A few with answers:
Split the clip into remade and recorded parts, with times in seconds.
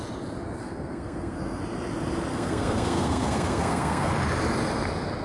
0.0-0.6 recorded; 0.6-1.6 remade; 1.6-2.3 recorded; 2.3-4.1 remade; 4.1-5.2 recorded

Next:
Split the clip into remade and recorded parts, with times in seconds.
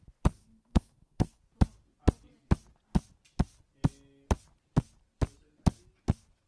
0.0-0.4 recorded; 0.4-1.4 remade; 1.4-6.5 recorded